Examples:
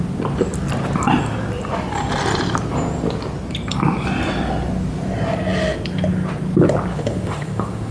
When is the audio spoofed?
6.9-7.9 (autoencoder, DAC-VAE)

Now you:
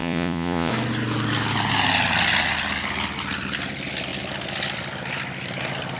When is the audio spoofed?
0.0-0.7 (vocoder, Vocos)

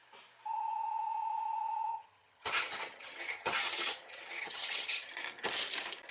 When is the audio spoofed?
1.9-5.1 (vocoder, HiFi-GAN)

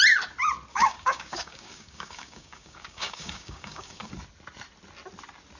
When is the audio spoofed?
0.7-4.1 (codec, DAC)

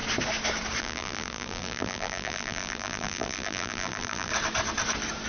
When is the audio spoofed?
0.8-4.3 (vocoder, BigVGAN v2)

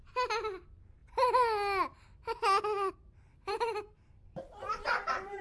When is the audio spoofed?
3.3-5.4 (vocoder, BigVGAN v2)